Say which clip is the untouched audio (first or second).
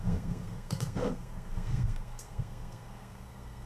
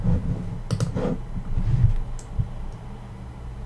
second